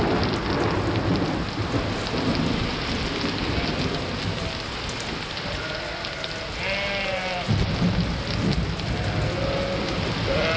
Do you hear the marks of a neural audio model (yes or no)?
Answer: no